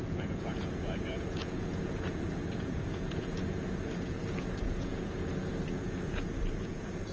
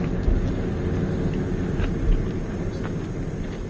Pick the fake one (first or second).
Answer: first